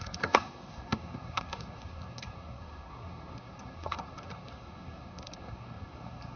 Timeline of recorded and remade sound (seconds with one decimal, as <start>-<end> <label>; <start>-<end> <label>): 0.0-6.4 remade